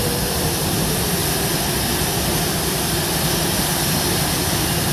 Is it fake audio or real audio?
real